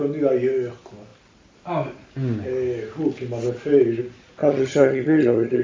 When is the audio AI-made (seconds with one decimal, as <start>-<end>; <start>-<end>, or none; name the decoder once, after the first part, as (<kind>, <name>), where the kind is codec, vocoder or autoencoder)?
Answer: 4.4-5.6 (vocoder, HiFi-GAN)